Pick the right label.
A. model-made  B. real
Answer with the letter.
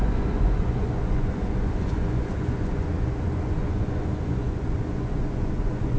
A